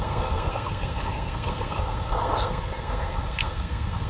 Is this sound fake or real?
fake